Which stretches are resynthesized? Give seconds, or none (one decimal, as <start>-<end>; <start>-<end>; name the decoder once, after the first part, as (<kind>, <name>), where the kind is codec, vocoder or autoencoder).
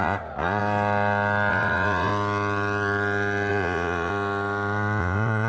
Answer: 0.0-0.6 (vocoder, Vocos); 1.5-2.1; 3.5-4.1; 5.0-5.5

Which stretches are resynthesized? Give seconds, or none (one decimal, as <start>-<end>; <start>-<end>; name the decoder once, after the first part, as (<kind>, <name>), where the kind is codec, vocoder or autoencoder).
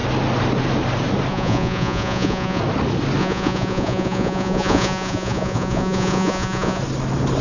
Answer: 1.3-2.6 (vocoder, Vocos); 3.2-6.8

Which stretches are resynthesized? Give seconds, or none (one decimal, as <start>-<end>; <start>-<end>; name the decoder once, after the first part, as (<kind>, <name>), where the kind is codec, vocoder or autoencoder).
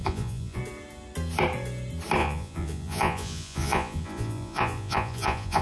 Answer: 0.0-0.6 (vocoder, Vocos); 2.2-5.6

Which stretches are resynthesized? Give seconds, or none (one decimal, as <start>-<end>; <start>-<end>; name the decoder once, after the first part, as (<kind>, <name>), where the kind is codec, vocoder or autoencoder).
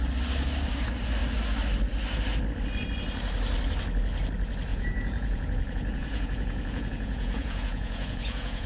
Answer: 4.7-8.7 (vocoder, Vocos)